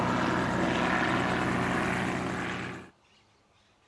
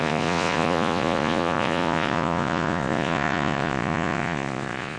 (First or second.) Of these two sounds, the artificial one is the second